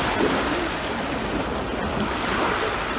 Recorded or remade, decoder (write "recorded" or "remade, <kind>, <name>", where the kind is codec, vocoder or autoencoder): recorded